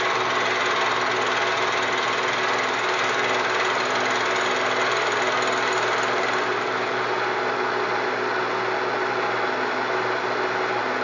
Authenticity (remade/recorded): recorded